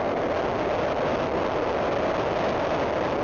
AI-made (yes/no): no